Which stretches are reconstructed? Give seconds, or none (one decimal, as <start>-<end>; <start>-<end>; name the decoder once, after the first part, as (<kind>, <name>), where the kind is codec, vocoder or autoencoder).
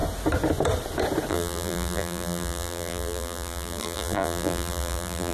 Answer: 1.3-5.3 (vocoder, BigVGAN v2)